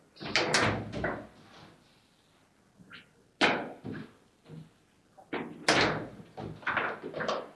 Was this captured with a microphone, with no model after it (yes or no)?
yes